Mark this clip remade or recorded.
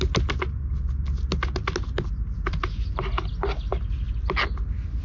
recorded